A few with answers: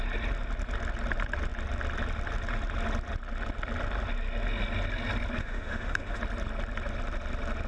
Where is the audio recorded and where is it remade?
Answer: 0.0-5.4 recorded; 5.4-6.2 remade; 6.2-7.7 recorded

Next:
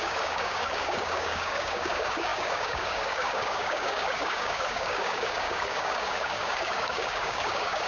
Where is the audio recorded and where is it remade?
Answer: 0.0-7.9 remade

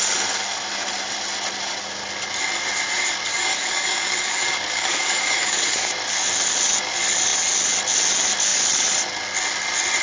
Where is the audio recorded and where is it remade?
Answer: 0.0-3.3 recorded; 3.3-5.9 remade; 5.9-10.0 recorded

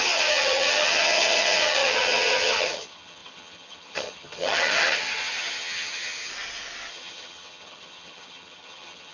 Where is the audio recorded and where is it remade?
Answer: 0.0-6.3 remade; 6.3-6.9 recorded; 6.9-9.1 remade